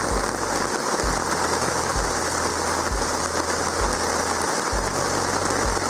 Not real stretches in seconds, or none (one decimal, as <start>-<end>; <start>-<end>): none